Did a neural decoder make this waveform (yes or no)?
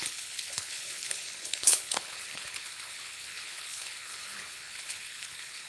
yes